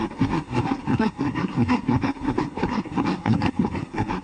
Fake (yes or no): yes